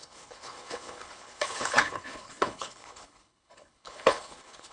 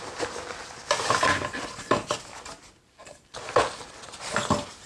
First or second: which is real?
second